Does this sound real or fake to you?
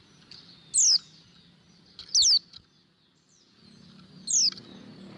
real